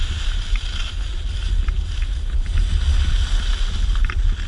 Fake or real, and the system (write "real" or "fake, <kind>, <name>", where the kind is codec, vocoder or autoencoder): real